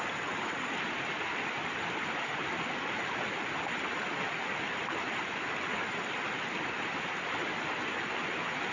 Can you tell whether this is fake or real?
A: real